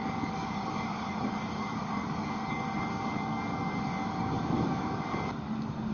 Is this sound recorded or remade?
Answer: remade